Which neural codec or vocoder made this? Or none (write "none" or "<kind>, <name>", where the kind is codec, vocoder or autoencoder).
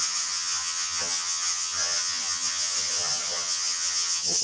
vocoder, HiFi-GAN